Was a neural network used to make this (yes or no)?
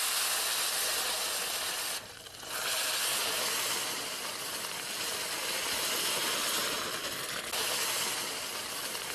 no